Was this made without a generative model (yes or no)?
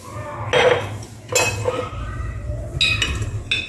yes